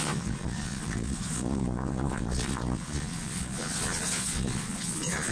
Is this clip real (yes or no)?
no